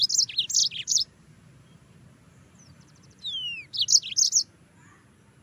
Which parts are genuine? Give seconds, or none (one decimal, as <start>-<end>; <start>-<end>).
0.0-0.6; 3.2-5.4